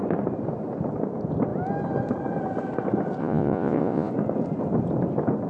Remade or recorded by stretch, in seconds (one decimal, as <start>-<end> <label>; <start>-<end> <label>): 0.0-3.2 recorded; 3.2-4.1 remade; 4.1-5.5 recorded